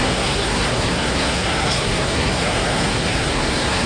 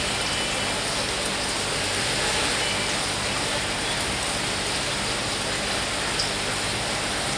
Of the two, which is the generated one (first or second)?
first